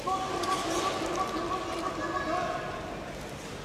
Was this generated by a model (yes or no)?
no